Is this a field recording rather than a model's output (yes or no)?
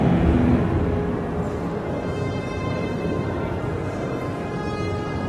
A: yes